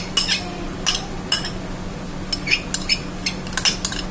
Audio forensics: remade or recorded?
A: recorded